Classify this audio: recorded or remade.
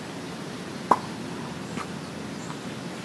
recorded